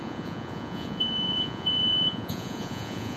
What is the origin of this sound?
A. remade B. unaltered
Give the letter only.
A